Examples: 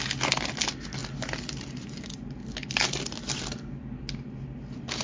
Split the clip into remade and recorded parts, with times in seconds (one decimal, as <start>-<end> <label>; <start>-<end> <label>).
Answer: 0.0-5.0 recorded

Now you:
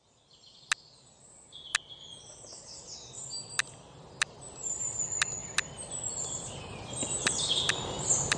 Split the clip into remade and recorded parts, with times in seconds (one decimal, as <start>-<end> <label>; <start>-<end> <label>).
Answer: 0.0-8.4 recorded

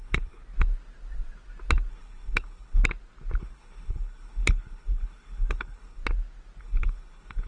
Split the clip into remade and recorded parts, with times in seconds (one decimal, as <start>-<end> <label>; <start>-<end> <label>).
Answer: 0.0-0.4 remade; 0.4-1.9 recorded; 1.9-2.8 remade; 2.8-3.4 recorded; 3.4-6.0 remade; 6.0-6.6 recorded; 6.6-7.5 remade

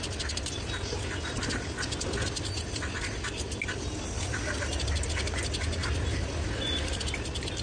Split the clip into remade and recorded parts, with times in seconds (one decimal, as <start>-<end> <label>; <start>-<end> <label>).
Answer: 0.0-7.6 recorded